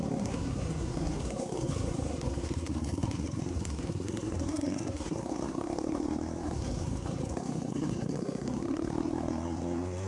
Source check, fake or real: fake